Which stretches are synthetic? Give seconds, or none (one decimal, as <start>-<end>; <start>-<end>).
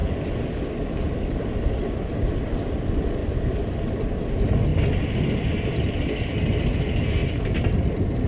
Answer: 0.0-2.3; 4.7-5.9